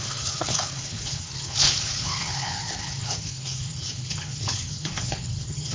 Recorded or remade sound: remade